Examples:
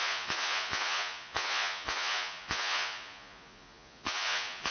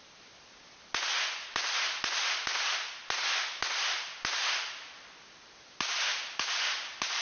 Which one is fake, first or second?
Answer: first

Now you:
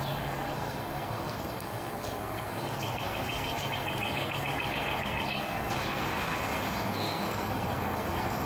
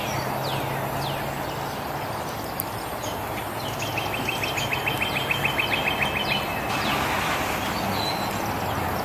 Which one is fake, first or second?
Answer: first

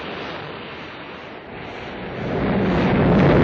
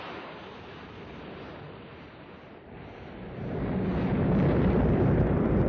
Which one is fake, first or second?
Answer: second